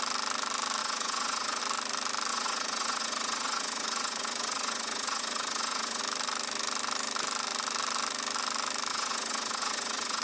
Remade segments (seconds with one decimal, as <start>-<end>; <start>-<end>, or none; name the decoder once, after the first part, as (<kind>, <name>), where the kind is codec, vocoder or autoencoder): 0.8-1.6 (vocoder, Vocos); 2.3-6.0; 8.9-10.2